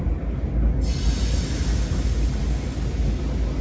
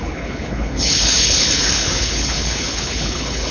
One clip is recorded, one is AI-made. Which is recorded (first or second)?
first